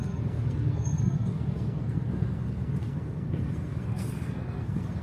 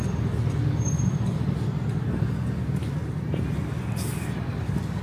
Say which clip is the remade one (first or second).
first